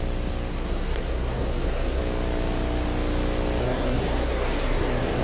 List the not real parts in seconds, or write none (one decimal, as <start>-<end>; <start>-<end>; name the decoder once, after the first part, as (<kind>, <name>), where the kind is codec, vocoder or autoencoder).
0.5-2.0 (codec, SNAC); 3.6-5.2